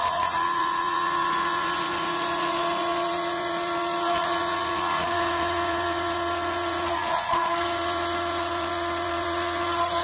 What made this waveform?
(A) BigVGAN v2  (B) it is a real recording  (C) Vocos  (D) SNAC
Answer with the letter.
C